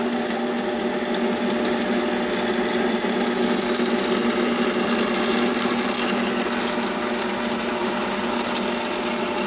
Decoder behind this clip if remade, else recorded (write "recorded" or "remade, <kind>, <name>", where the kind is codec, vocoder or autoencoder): recorded